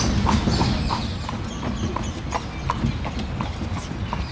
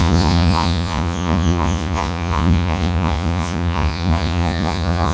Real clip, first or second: first